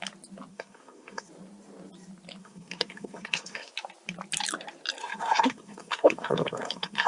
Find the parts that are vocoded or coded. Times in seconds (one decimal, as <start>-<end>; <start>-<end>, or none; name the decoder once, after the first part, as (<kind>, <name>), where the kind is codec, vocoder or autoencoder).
0.5-1.3 (codec, SNAC); 2.4-3.7; 5.0-7.1